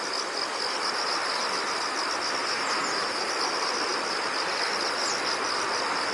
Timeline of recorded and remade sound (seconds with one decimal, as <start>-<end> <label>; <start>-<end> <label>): 0.0-2.4 recorded; 2.4-3.1 remade; 3.1-6.1 recorded